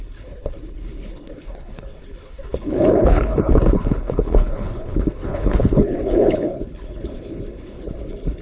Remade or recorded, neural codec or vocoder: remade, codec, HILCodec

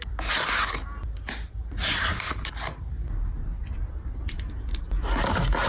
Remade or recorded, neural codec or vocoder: recorded